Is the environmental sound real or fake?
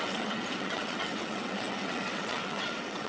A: fake